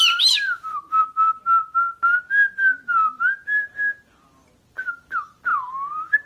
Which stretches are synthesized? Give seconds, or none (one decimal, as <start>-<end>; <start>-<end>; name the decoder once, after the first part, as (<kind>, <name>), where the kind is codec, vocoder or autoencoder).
0.0-1.0 (vocoder, BigVGAN v2); 4.7-5.5

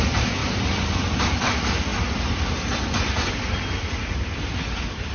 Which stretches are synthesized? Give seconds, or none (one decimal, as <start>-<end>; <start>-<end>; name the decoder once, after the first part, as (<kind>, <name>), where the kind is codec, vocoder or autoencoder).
0.0-1.9 (vocoder, BigVGAN v2)

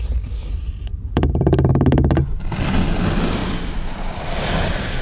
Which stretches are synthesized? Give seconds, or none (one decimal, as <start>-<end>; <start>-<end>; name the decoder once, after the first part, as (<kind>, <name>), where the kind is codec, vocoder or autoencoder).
0.4-1.7 (vocoder, BigVGAN v2); 3.4-4.2

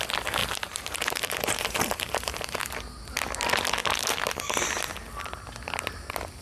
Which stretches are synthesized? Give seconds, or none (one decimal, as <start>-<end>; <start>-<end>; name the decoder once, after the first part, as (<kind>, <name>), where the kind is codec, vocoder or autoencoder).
0.4-2.6 (vocoder, BigVGAN v2)

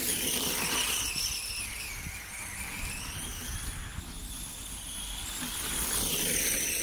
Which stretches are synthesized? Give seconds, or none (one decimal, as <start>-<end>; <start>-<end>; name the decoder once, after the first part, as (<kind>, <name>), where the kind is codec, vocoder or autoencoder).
3.9-4.5 (vocoder, BigVGAN v2)